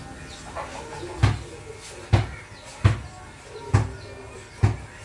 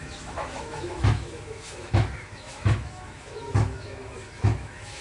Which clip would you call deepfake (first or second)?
second